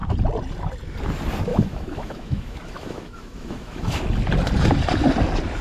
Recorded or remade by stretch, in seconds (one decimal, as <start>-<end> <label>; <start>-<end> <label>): 0.0-1.5 recorded; 1.5-4.0 remade; 4.0-5.6 recorded